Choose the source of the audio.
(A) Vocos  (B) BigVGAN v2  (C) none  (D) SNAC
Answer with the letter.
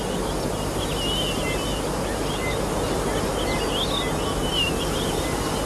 C